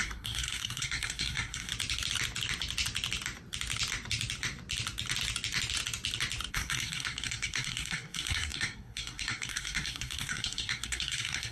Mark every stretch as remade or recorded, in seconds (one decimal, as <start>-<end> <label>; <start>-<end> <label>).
0.0-1.7 remade; 1.7-6.5 recorded; 6.5-11.5 remade